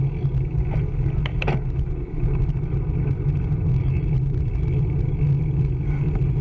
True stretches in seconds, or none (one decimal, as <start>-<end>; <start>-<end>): 0.0-6.4